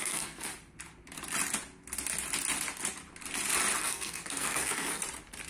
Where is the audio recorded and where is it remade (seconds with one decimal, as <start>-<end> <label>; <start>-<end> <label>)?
0.0-0.5 remade; 0.5-3.8 recorded; 3.8-5.0 remade; 5.0-5.5 recorded